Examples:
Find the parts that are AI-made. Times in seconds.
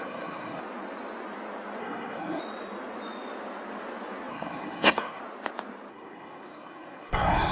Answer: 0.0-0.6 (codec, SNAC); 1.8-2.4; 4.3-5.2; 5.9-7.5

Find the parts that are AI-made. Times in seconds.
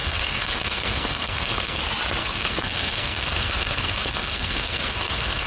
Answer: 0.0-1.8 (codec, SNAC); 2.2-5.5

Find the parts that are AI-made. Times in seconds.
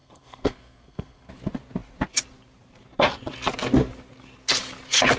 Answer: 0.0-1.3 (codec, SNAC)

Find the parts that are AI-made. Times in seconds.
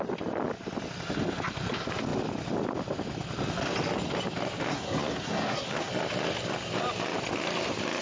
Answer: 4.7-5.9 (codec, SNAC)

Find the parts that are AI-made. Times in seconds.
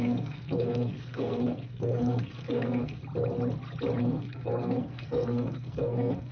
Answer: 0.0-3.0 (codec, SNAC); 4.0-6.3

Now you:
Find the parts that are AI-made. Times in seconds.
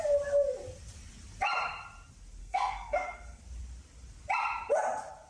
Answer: 2.4-3.4 (codec, SNAC)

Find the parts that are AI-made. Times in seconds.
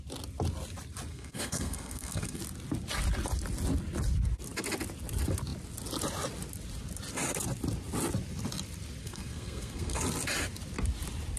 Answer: 1.1-2.4 (codec, SNAC); 9.0-10.0